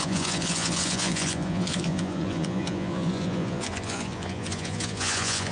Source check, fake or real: fake